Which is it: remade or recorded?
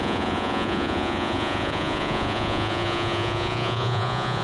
remade